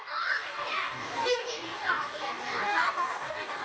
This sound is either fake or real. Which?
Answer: fake